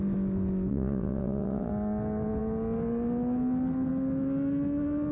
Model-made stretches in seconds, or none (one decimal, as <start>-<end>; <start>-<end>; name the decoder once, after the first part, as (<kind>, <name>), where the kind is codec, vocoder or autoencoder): 0.7-1.7 (vocoder, WaveNeXt)